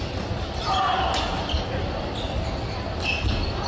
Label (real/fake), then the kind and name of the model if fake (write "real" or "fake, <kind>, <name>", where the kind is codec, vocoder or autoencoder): real